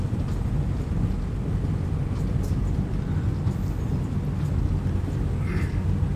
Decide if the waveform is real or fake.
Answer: real